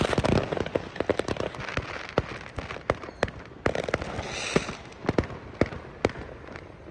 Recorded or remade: recorded